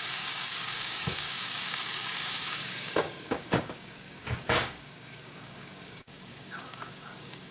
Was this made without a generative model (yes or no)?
no